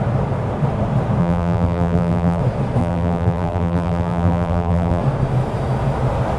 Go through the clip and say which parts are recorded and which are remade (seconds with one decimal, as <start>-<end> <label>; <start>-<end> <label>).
0.0-1.2 recorded; 1.2-2.4 remade; 2.4-2.8 recorded; 2.8-5.0 remade; 5.0-6.4 recorded